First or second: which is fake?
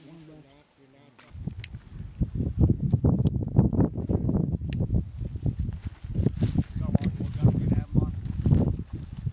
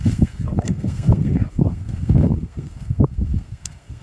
second